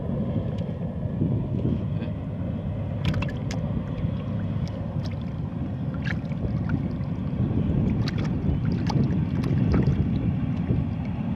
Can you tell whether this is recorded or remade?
recorded